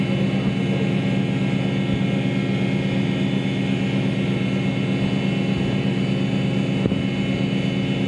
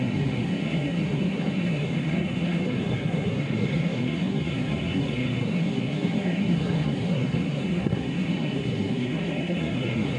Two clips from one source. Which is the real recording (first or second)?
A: first